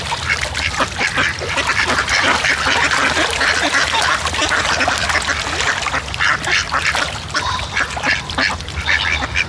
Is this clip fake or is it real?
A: real